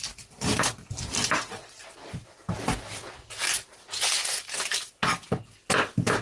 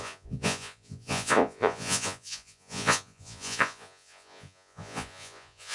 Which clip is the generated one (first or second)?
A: second